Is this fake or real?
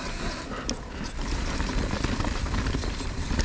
real